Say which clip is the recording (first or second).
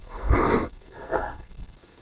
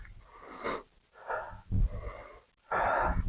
second